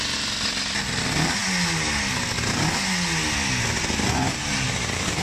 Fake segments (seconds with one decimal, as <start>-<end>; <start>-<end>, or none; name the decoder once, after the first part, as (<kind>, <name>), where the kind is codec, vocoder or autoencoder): none